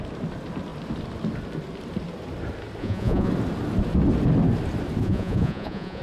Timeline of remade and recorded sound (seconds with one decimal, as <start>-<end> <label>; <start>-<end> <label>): 0.0-2.8 recorded; 2.8-3.3 remade; 3.3-5.0 recorded; 5.0-6.0 remade